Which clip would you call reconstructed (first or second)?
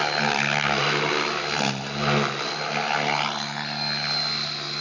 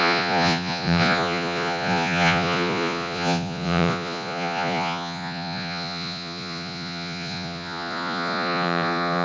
second